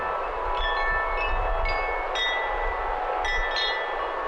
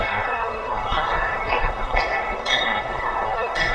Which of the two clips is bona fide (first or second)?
first